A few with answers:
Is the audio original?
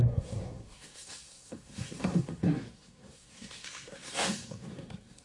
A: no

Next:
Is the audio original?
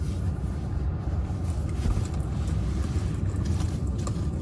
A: yes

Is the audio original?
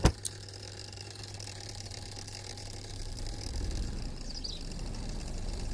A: yes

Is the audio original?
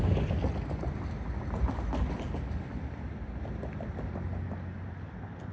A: yes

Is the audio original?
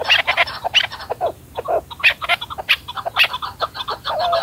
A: yes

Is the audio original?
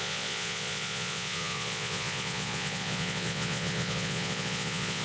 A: no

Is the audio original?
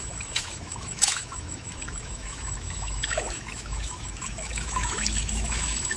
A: no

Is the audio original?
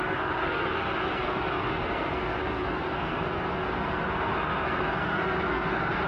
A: no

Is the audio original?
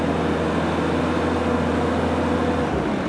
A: yes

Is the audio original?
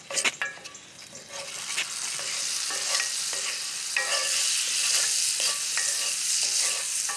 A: yes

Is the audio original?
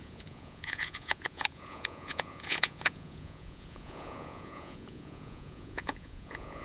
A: no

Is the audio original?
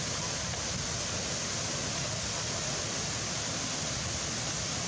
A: yes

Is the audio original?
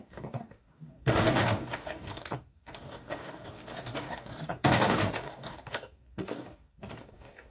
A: no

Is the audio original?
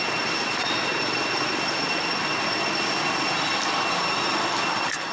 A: yes